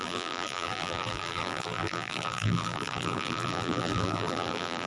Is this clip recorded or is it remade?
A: remade